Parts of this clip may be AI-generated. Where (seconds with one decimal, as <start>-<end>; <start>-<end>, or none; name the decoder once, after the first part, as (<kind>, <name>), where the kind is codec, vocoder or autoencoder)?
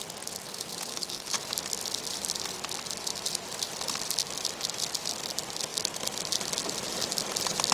0.9-1.5 (codec, DAC)